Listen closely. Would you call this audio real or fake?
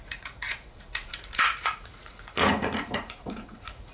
fake